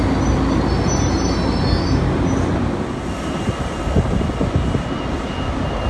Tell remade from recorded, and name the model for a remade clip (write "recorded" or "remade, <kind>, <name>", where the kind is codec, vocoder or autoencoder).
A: recorded